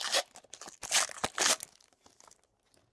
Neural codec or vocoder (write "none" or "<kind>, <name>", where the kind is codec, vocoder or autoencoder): none